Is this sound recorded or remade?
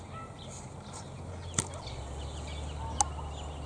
recorded